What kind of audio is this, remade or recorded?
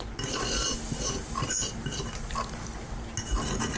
recorded